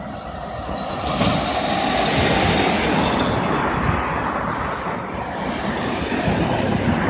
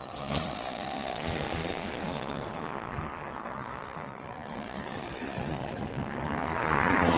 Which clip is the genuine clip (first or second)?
first